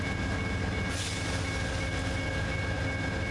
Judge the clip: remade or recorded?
recorded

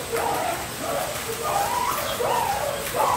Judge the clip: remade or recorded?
recorded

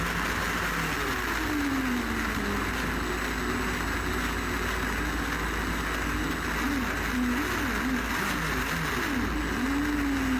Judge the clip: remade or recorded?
recorded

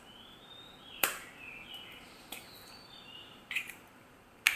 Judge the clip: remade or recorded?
remade